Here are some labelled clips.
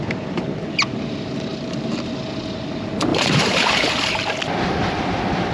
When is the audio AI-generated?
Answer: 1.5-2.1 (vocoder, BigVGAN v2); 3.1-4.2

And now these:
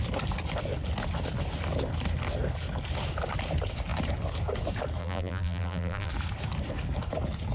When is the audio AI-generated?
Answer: 5.0-6.1 (vocoder, BigVGAN v2)

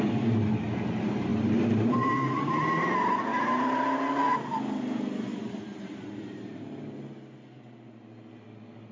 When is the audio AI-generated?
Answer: 1.3-2.5 (vocoder, BigVGAN v2); 3.3-3.8; 5.3-6.8

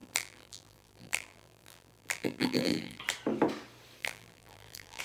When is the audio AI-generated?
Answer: 0.0-3.0 (vocoder, BigVGAN v2); 4.0-5.0

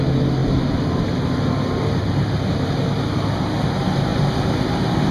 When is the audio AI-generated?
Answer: 0.4-2.8 (vocoder, BigVGAN v2); 4.1-5.1

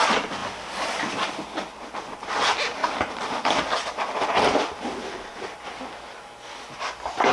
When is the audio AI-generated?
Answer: 2.8-5.6 (vocoder, BigVGAN v2)

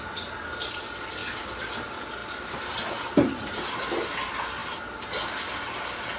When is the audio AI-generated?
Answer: 2.2-3.5 (vocoder, BigVGAN v2)

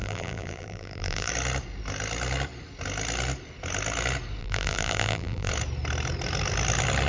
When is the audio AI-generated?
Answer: 0.0-1.3 (vocoder, BigVGAN v2); 4.4-5.5